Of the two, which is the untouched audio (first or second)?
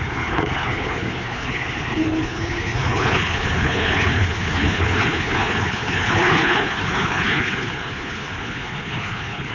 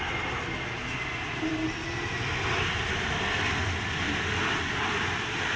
second